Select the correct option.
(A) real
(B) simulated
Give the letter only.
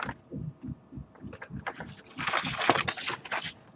A